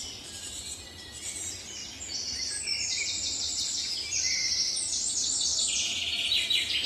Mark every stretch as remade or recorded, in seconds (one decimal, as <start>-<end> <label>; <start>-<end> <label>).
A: 0.0-1.8 recorded; 1.8-2.6 remade; 2.6-4.4 recorded; 4.4-5.1 remade; 5.1-6.9 recorded